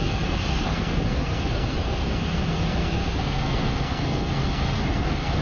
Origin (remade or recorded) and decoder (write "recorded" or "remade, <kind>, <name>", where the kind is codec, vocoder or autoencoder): remade, codec, SNAC